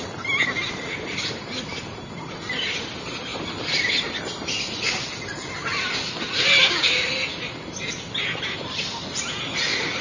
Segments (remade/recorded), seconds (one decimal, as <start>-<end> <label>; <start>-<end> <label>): 0.0-10.0 recorded